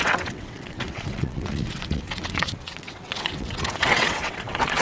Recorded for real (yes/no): no